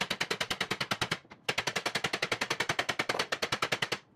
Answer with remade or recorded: recorded